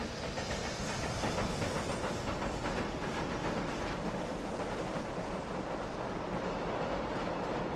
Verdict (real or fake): real